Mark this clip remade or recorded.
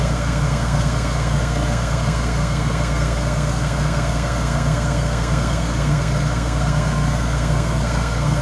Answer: remade